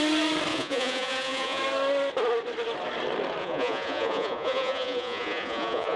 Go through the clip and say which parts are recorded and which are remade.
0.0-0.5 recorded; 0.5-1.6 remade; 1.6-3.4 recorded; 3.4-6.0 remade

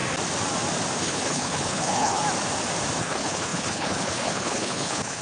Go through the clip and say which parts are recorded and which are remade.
0.0-1.0 recorded; 1.0-2.2 remade; 2.2-3.0 recorded; 3.0-5.2 remade

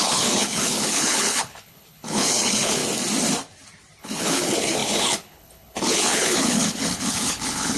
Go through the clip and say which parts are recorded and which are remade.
0.0-2.8 remade; 2.8-4.0 recorded; 4.0-7.8 remade